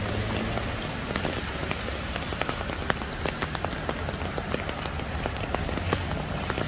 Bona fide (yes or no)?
yes